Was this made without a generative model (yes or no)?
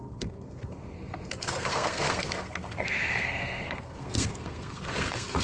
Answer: no